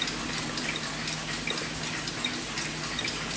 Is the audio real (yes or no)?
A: yes